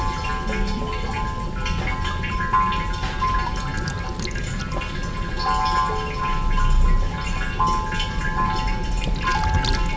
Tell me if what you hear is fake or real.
real